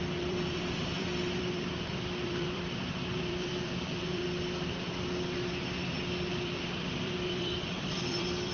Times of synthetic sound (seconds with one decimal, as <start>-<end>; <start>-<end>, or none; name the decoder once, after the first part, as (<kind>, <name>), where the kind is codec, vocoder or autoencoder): 0.0-4.2 (vocoder, BigVGAN v2); 6.3-8.5